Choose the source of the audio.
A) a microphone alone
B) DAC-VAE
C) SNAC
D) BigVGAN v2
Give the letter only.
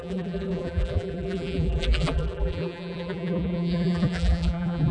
D